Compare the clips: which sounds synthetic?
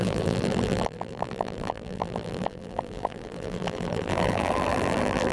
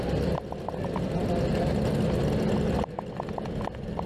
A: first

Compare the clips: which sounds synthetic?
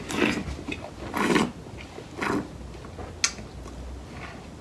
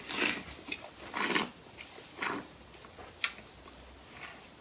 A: second